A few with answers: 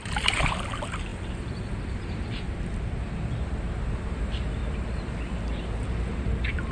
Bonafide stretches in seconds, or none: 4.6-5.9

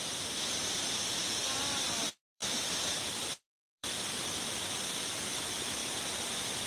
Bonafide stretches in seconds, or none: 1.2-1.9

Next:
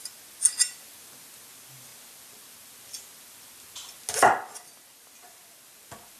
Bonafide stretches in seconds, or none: 0.0-6.2

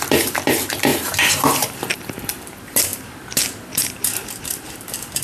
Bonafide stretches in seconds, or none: none